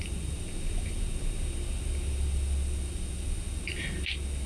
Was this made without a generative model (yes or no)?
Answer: yes